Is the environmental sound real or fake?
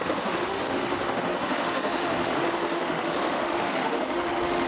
fake